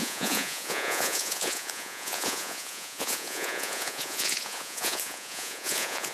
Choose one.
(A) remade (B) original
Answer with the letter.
A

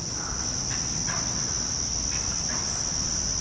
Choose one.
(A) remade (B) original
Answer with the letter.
B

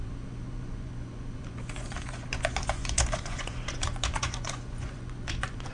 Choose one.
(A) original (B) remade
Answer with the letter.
B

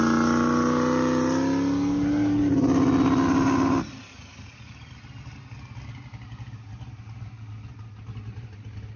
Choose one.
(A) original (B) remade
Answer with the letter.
A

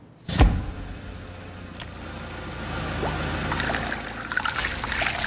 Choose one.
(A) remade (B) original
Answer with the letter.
B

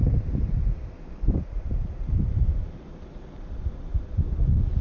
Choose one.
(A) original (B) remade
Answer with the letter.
A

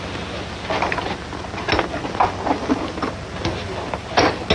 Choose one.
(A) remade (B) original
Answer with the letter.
B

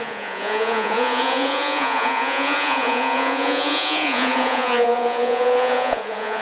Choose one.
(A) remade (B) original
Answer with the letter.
A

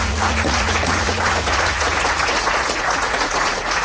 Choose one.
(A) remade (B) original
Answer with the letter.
A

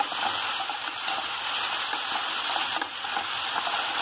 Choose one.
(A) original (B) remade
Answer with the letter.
A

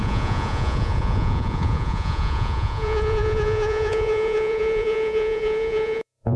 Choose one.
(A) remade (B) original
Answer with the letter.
A